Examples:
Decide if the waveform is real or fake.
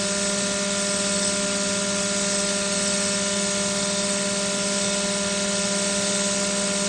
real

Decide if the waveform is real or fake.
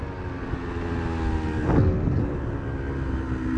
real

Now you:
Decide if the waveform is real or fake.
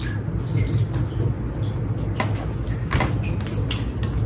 real